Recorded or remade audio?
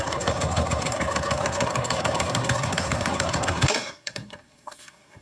remade